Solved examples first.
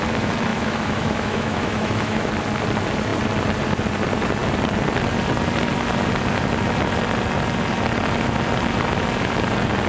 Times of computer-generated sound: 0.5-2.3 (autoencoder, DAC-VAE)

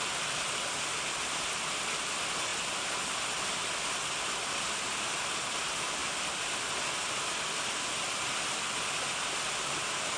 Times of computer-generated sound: none